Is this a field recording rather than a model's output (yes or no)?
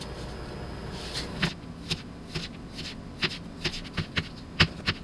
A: yes